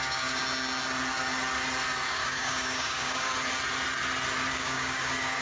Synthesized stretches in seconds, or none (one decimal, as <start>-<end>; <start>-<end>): 0.0-0.4; 2.1-3.3; 4.5-5.4